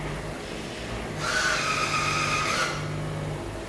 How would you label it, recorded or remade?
recorded